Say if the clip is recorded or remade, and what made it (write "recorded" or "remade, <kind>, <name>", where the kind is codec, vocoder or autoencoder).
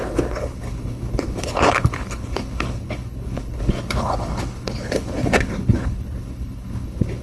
remade, codec, HILCodec